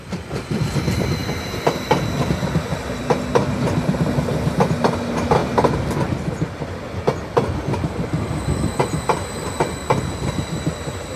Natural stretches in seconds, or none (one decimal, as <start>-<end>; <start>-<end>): 0.0-11.2